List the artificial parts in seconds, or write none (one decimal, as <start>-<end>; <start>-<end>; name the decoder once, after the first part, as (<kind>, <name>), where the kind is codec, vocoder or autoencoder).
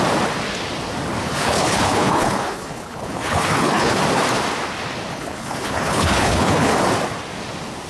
1.2-4.0 (codec, HILCodec); 5.1-6.7